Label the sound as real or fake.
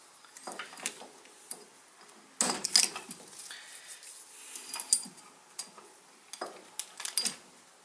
real